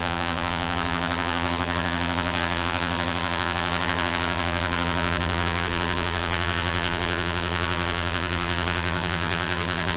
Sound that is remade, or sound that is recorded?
remade